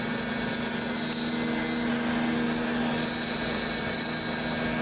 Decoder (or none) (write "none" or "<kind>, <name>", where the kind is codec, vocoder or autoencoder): none